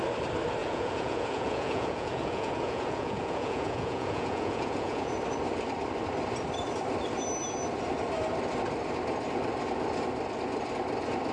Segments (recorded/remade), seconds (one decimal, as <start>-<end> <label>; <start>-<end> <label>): 0.0-0.6 recorded; 0.6-5.1 remade; 5.1-11.3 recorded